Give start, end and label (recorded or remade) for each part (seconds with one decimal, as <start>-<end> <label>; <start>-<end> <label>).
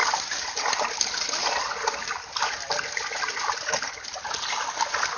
0.0-5.2 recorded